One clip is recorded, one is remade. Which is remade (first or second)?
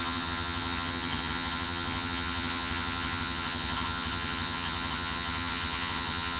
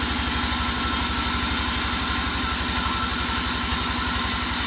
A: first